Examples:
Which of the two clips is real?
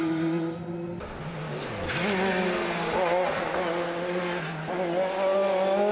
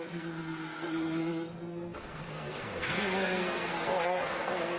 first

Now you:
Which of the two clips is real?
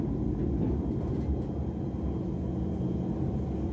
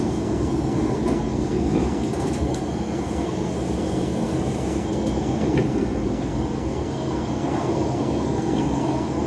first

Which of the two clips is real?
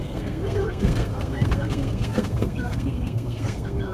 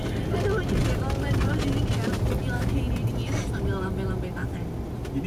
second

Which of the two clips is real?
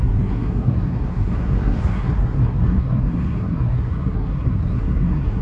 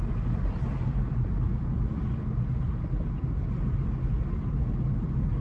second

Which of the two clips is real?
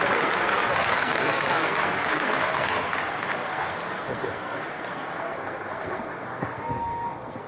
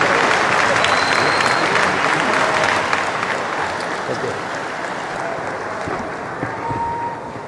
second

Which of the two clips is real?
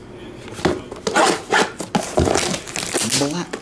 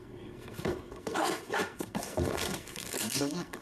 first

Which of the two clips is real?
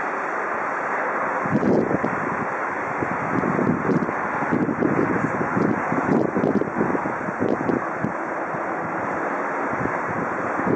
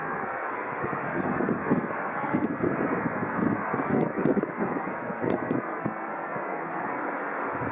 first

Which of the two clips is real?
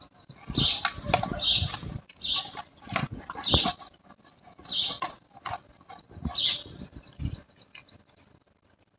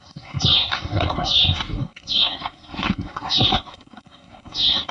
first